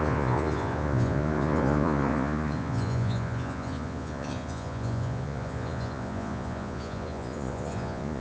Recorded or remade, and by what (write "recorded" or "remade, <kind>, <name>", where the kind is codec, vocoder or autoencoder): remade, vocoder, Vocos